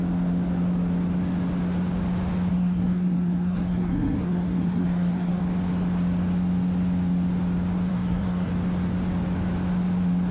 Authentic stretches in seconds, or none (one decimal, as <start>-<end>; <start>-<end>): 0.0-2.5; 5.4-7.9; 8.5-10.3